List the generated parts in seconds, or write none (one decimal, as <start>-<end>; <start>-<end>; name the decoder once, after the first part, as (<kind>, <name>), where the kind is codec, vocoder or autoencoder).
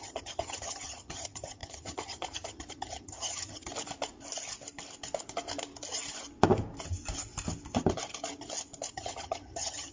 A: 0.0-3.7 (vocoder, HiFi-GAN); 8.9-9.9